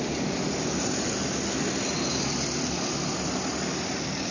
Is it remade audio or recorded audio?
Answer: recorded